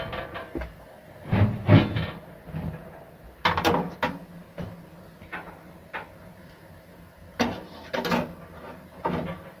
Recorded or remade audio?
recorded